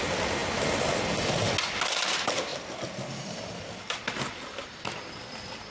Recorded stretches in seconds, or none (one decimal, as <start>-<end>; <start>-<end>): 0.0-5.7